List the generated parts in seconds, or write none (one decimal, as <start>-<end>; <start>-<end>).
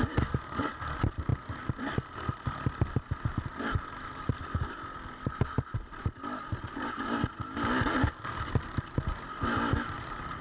none